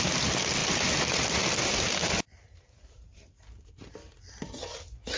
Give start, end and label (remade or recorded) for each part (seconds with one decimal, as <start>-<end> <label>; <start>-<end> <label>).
0.0-0.6 recorded; 0.6-3.7 remade; 3.7-5.2 recorded